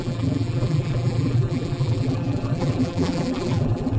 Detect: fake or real fake